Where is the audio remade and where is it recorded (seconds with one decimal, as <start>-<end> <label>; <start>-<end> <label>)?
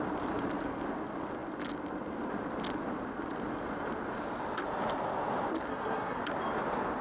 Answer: 0.0-5.7 recorded; 5.7-6.2 remade; 6.2-7.0 recorded